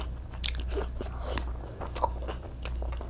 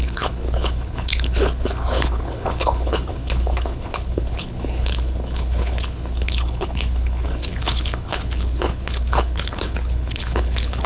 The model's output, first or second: second